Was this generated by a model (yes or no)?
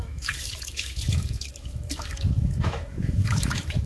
yes